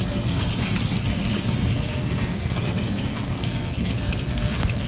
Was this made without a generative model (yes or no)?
no